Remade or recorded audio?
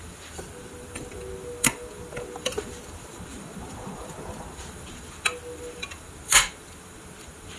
remade